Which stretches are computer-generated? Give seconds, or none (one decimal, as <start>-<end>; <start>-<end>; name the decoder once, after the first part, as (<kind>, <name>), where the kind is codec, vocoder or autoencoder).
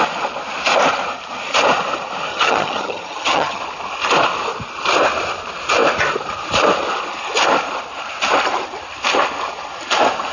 2.3-3.6 (vocoder, HiFi-GAN)